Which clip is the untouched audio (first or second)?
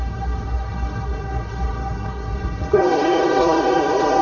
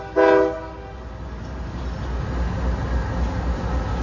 second